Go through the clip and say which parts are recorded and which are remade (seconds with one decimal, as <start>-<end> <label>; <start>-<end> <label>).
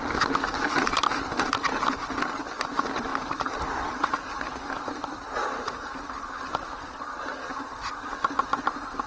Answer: 0.0-3.1 recorded; 3.1-5.4 remade; 5.4-9.1 recorded